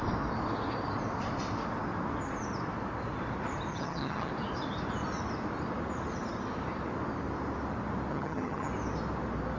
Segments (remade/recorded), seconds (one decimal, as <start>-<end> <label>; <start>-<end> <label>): 0.0-3.7 recorded; 3.7-4.3 remade; 4.3-8.1 recorded; 8.1-8.7 remade; 8.7-9.6 recorded